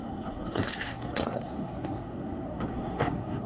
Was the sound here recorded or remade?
remade